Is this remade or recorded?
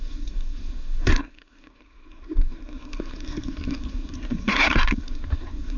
remade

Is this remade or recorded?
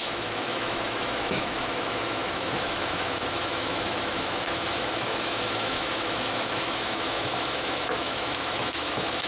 remade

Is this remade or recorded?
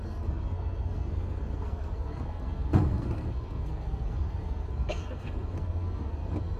remade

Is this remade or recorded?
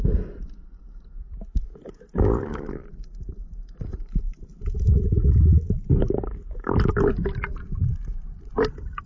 recorded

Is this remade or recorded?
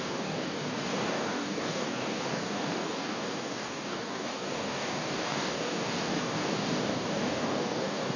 remade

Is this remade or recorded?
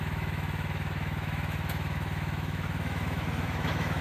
remade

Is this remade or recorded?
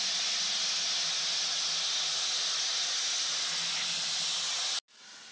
recorded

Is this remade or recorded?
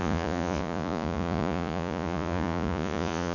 remade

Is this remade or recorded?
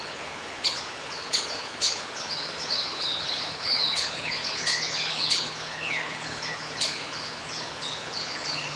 remade